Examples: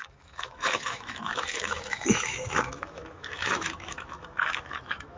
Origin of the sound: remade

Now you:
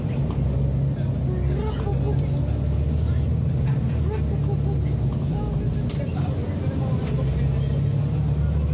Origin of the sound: recorded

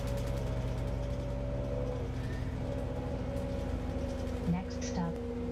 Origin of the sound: recorded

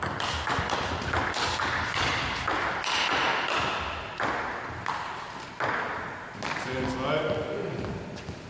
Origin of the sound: recorded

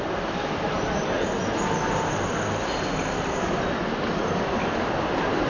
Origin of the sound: recorded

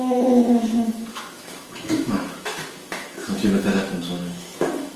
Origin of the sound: remade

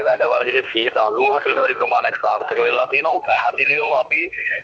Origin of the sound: remade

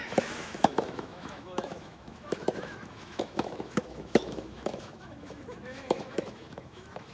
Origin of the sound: remade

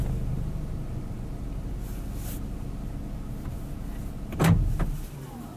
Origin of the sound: recorded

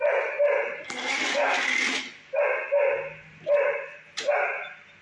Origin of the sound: recorded